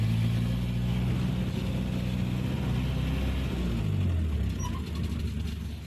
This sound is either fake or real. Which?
real